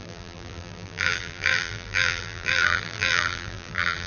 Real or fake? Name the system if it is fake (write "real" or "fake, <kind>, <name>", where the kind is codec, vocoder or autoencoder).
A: fake, vocoder, BigVGAN v2